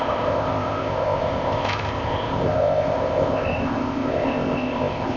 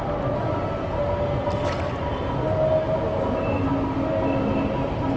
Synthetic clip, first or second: first